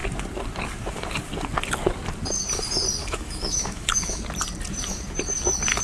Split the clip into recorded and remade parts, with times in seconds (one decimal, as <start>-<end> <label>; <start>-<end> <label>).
0.0-3.0 recorded; 3.0-4.2 remade; 4.2-5.8 recorded